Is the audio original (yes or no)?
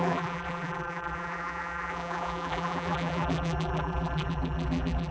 no